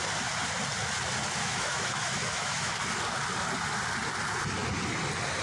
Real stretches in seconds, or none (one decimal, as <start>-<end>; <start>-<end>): 0.0-1.4; 2.7-5.4